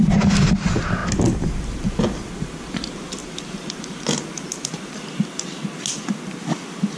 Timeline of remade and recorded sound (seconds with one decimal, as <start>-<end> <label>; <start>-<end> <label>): 0.0-3.2 recorded; 3.2-5.0 remade; 5.0-7.0 recorded